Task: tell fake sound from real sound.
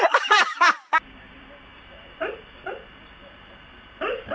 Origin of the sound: fake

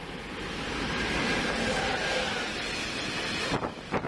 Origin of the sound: real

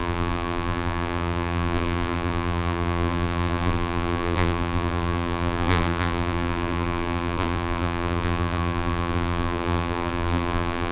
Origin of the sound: fake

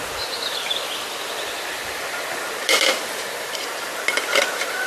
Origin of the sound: real